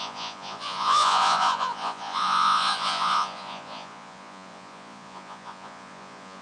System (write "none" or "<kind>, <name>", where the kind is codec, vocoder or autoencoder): vocoder, Vocos